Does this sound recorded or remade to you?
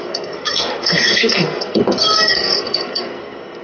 remade